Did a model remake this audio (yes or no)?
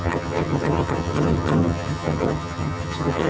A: yes